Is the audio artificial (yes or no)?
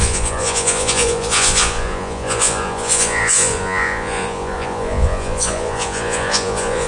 yes